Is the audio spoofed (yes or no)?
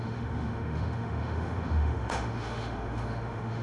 yes